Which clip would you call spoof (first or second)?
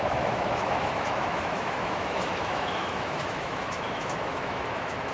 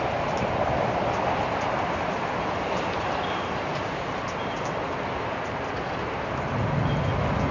first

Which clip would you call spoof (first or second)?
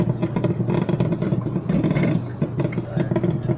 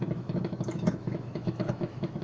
second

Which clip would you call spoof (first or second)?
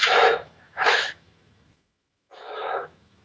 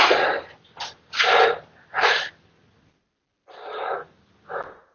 first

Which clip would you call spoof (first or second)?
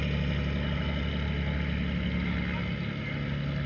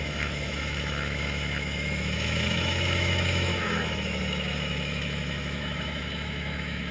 second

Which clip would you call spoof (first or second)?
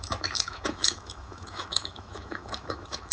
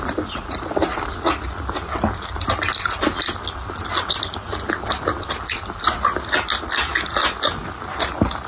first